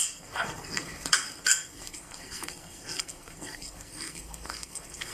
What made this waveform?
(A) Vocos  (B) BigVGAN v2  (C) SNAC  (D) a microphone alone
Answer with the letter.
C